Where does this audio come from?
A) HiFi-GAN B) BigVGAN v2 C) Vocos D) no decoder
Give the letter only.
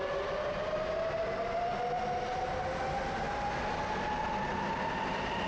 D